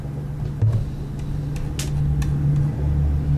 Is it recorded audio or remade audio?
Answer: recorded